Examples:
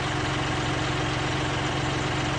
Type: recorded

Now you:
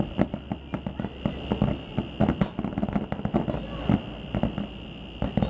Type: recorded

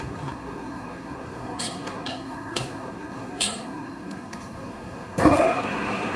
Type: remade